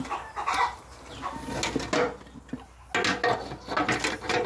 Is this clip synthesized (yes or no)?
no